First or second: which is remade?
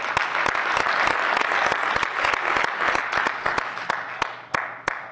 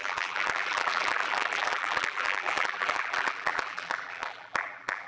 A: second